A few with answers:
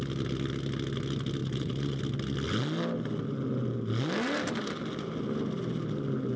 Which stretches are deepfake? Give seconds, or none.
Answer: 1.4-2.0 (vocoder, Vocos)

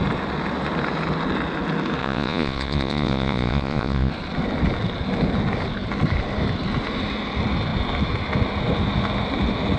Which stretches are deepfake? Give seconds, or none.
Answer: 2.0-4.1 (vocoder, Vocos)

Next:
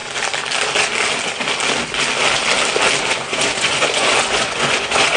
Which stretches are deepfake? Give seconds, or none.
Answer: 3.1-5.2 (vocoder, Vocos)

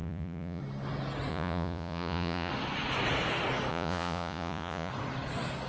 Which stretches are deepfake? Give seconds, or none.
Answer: 0.0-0.6 (vocoder, Vocos); 1.3-2.5; 3.7-4.9

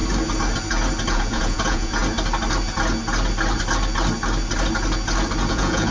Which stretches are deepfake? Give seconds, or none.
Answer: 1.1-2.0 (vocoder, Vocos); 5.5-5.9

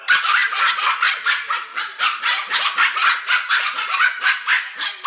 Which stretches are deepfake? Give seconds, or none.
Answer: none

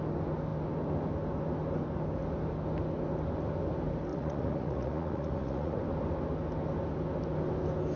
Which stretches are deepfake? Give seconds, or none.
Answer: 4.1-5.8 (vocoder, Vocos)